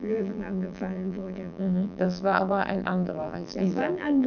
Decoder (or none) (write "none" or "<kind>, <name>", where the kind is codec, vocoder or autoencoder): vocoder, BigVGAN v2